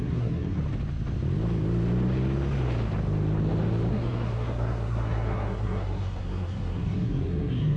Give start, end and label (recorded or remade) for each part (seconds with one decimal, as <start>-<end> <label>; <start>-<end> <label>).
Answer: 0.0-0.6 remade; 0.6-3.9 recorded; 3.9-7.8 remade

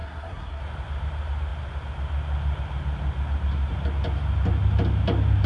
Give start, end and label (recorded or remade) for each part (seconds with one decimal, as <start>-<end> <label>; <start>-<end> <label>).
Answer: 0.0-0.6 remade; 0.6-5.5 recorded

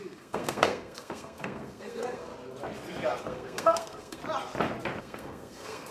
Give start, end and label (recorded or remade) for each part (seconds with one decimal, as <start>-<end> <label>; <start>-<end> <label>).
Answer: 0.0-2.3 remade; 2.3-3.2 recorded; 3.2-4.2 remade; 4.2-5.0 recorded; 5.0-5.9 remade

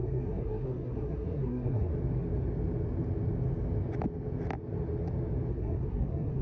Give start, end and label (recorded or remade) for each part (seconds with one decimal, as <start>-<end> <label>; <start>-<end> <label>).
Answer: 0.0-1.9 remade; 1.9-5.5 recorded; 5.5-6.4 remade

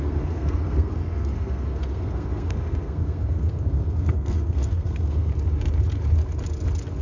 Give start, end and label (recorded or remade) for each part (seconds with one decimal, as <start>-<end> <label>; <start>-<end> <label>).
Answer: 0.0-5.3 remade; 5.3-7.0 recorded

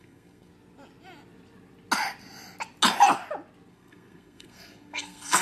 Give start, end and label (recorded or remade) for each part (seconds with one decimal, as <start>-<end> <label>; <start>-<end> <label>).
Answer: 0.0-0.5 remade; 0.5-3.7 recorded; 3.7-5.4 remade

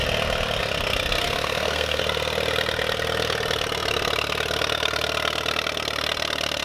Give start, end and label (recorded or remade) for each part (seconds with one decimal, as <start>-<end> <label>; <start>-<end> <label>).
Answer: 0.0-1.2 recorded; 1.2-2.0 remade; 2.0-6.6 recorded

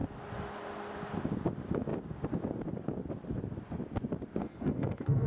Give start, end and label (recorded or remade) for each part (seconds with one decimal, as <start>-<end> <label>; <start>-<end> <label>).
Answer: 0.0-4.4 recorded; 4.4-5.3 remade